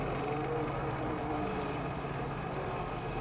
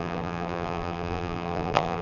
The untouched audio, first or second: first